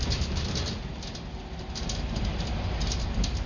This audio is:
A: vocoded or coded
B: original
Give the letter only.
B